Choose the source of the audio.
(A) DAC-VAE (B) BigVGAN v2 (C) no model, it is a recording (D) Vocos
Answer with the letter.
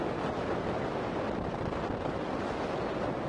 C